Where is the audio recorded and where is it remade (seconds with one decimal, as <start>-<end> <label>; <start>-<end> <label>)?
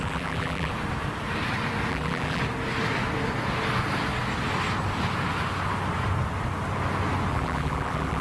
0.0-0.7 remade; 0.7-1.9 recorded; 1.9-2.4 remade; 2.4-7.3 recorded; 7.3-8.2 remade